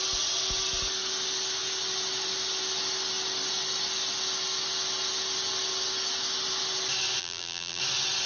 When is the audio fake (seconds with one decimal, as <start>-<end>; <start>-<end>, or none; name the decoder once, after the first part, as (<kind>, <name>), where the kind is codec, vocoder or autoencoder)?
7.2-7.8 (vocoder, BigVGAN v2)